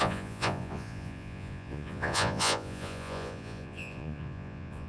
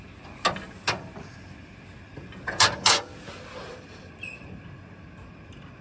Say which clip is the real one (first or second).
second